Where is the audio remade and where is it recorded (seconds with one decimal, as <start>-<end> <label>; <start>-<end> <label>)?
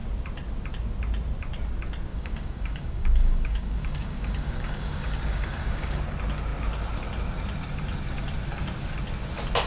0.0-2.1 recorded; 2.1-6.0 remade; 6.0-9.7 recorded